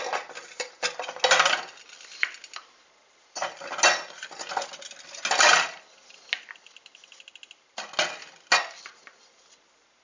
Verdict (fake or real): real